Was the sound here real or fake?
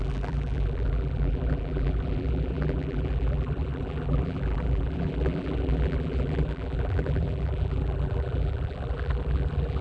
fake